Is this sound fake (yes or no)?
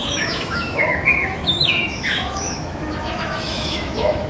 yes